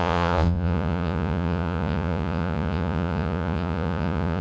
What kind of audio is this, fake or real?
fake